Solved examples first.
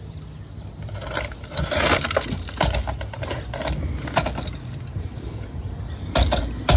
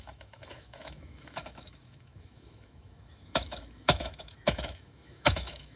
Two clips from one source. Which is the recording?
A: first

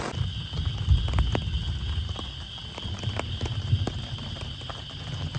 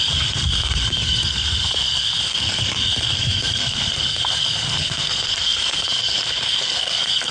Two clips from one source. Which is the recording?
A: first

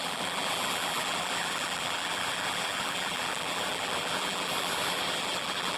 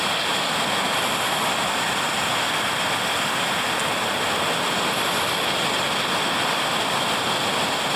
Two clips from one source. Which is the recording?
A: second